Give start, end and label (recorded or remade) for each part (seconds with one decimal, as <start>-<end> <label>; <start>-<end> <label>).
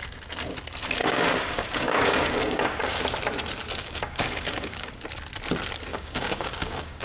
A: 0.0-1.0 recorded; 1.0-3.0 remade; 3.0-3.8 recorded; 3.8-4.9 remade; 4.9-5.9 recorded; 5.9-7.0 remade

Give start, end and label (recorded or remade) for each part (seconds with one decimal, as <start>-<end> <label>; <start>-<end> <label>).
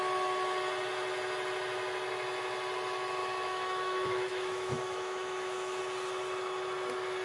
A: 0.0-3.2 recorded; 3.2-5.8 remade; 5.8-7.2 recorded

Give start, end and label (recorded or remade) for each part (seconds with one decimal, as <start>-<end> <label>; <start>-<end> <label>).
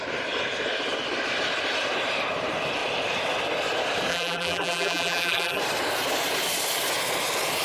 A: 0.0-4.1 recorded; 4.1-5.6 remade; 5.6-7.6 recorded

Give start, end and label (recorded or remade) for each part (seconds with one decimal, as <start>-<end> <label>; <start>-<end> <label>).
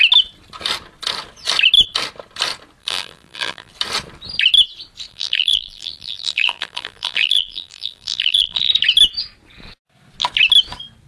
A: 0.0-2.8 recorded; 2.8-3.7 remade; 3.7-5.1 recorded; 5.1-8.7 remade; 8.7-11.1 recorded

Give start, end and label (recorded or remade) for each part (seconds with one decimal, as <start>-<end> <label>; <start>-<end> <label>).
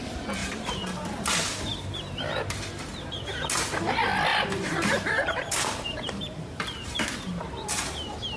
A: 0.0-0.4 recorded; 0.4-2.4 remade; 2.4-4.3 recorded; 4.3-7.0 remade; 7.0-8.4 recorded